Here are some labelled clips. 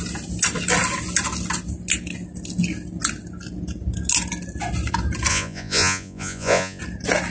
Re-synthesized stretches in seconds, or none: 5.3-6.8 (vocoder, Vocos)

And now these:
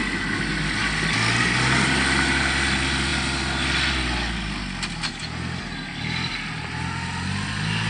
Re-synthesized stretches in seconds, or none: none

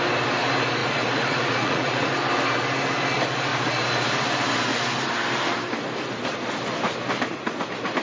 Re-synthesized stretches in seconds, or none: 0.8-2.1 (vocoder, Vocos)

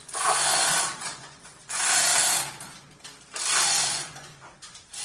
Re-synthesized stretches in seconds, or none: 0.0-2.1 (vocoder, Vocos); 3.7-5.0

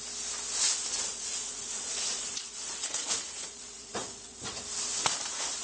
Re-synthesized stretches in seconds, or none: 1.1-4.5 (vocoder, Vocos)

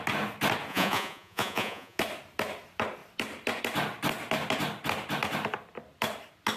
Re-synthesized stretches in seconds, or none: 0.7-2.0 (vocoder, Vocos)

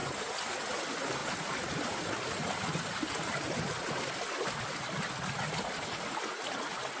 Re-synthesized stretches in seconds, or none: none